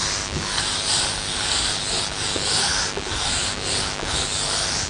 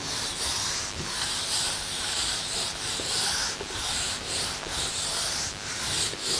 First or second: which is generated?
second